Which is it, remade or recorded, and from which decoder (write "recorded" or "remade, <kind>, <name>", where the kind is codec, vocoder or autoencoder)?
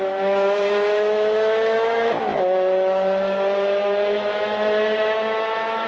remade, autoencoder, DAC-VAE